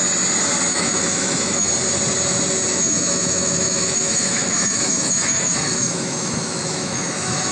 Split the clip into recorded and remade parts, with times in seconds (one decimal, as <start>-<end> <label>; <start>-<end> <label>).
0.0-0.7 recorded; 0.7-1.7 remade; 1.7-2.7 recorded; 2.7-7.5 remade